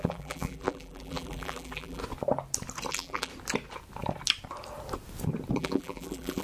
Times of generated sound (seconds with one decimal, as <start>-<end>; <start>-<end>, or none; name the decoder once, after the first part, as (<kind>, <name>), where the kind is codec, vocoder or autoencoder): 0.0-2.0 (vocoder, BigVGAN v2); 2.9-3.3; 5.6-6.4